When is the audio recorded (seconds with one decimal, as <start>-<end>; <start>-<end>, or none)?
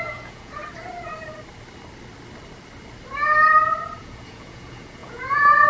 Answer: 0.6-4.0